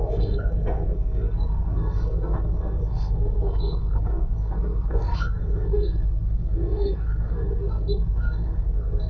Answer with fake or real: fake